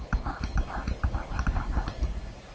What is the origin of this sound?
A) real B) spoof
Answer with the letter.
A